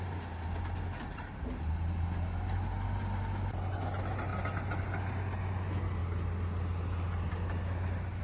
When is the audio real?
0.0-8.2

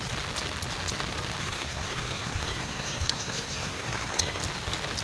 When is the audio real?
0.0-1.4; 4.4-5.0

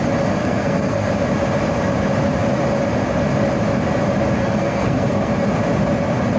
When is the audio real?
0.0-0.4; 1.1-4.4; 5.3-6.4